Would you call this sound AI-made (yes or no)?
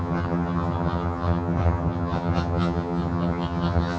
yes